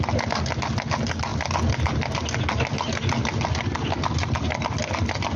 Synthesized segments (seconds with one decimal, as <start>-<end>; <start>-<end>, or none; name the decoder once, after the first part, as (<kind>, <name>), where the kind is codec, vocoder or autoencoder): none